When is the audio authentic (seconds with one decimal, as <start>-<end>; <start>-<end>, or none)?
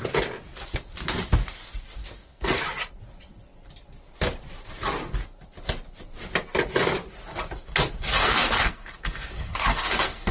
0.0-2.0; 2.6-8.2